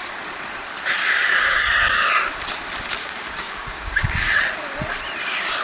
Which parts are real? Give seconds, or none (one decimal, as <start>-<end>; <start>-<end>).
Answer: 0.0-1.0; 2.1-3.0; 4.4-5.6